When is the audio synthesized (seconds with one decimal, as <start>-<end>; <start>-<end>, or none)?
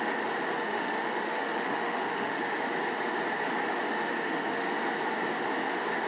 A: 0.6-2.7; 4.0-4.7